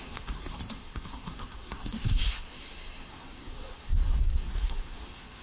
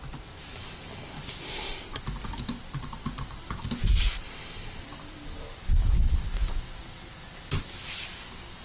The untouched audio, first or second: second